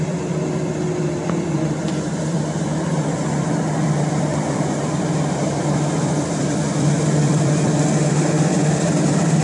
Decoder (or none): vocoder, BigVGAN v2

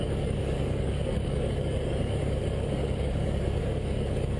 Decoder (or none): codec, DAC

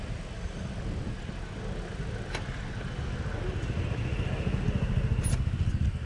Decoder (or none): none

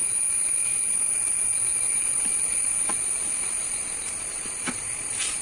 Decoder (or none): none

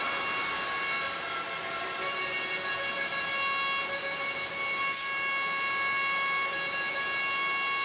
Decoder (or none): none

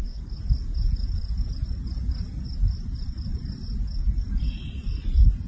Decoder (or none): none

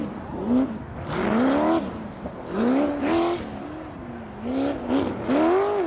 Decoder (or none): none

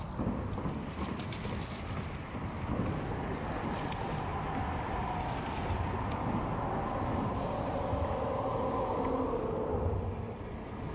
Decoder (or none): none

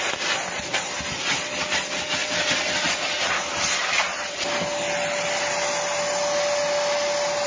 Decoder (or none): none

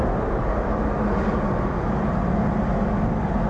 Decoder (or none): none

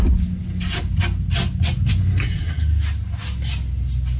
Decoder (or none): none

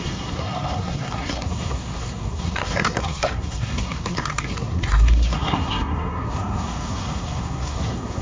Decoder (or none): codec, SNAC